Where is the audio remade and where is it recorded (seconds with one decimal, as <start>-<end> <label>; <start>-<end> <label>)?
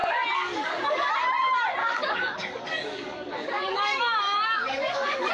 0.0-1.1 remade; 1.1-1.8 recorded; 1.8-5.3 remade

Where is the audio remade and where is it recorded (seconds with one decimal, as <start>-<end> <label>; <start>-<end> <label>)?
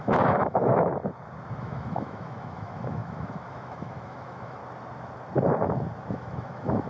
0.0-0.9 remade; 0.9-1.6 recorded; 1.6-4.6 remade; 4.6-6.1 recorded; 6.1-6.9 remade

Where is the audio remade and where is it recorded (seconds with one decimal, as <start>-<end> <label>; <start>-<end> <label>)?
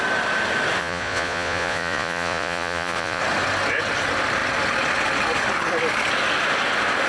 0.0-0.8 recorded; 0.8-3.2 remade; 3.2-7.1 recorded